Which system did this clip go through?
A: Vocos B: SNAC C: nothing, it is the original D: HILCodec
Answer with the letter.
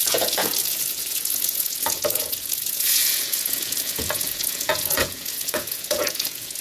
A